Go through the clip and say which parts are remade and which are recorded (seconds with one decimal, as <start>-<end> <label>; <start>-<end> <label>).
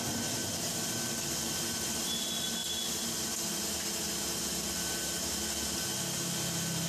0.0-0.4 recorded; 0.4-1.1 remade; 1.1-2.6 recorded; 2.6-3.3 remade; 3.3-6.9 recorded